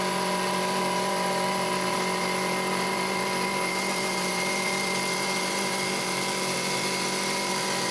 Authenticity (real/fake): fake